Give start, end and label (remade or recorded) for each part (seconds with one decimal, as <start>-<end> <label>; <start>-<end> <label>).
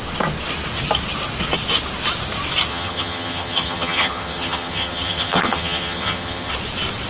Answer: 0.0-2.7 recorded; 2.7-6.5 remade; 6.5-7.1 recorded